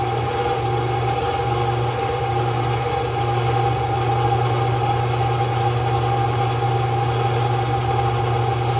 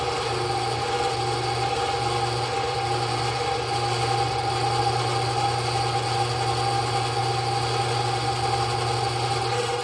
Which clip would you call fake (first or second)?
first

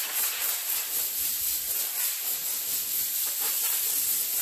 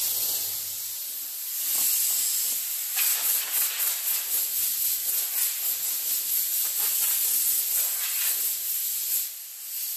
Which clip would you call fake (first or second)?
first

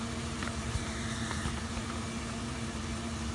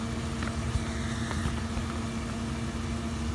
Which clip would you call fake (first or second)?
first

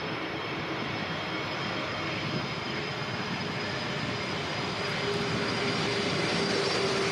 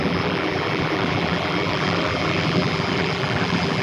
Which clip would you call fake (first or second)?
second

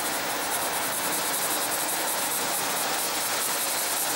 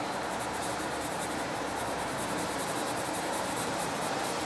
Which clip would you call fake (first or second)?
second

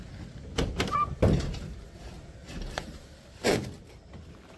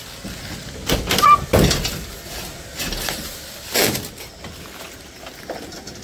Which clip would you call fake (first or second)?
first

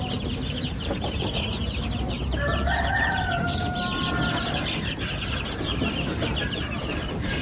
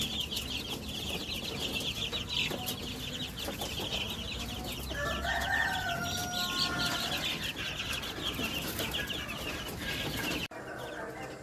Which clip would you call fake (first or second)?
first